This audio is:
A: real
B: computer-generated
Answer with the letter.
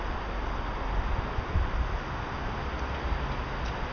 A